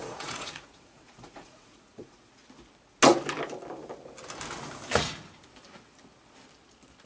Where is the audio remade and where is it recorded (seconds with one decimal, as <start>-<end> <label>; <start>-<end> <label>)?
0.0-2.4 remade; 2.4-7.1 recorded